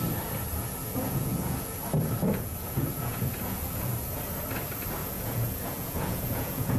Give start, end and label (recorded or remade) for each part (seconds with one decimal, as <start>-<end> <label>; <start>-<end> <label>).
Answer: 0.0-0.8 recorded; 0.8-1.8 remade; 1.8-2.2 recorded; 2.2-4.2 remade; 4.2-5.0 recorded; 5.0-6.8 remade